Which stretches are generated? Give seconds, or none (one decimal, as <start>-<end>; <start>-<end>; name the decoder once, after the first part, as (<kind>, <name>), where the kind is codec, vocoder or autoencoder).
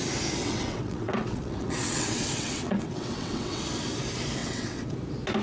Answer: 0.4-3.6 (vocoder, WaveNeXt); 4.4-4.9